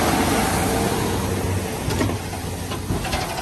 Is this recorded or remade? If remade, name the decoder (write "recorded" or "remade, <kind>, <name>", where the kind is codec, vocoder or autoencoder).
recorded